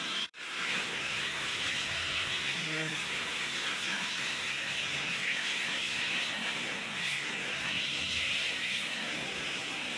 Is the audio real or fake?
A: fake